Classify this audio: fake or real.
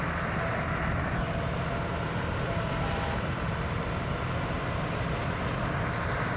real